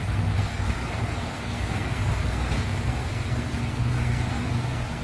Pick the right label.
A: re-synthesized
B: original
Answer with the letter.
A